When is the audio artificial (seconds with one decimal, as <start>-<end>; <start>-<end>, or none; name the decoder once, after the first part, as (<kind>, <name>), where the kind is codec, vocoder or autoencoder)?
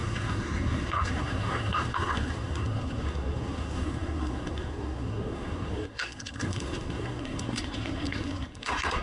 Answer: 0.0-9.0 (codec, SNAC)